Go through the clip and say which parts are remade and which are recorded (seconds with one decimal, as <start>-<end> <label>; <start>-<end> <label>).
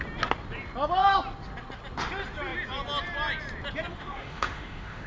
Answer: 0.0-3.9 recorded; 3.9-5.1 remade